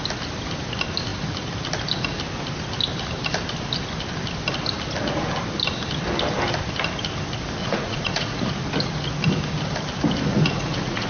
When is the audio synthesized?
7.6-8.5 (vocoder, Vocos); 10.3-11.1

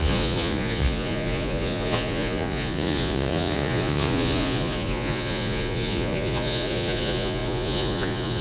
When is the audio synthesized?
0.0-8.4 (vocoder, Vocos)

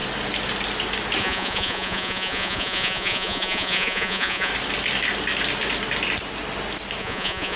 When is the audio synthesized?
1.2-4.5 (vocoder, Vocos); 7.0-7.6

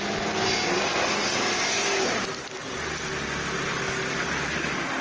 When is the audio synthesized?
none

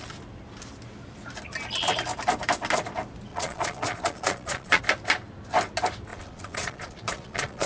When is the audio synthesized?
3.3-4.8 (vocoder, Vocos); 6.1-7.7